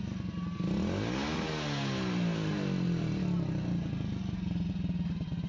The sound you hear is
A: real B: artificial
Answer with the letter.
A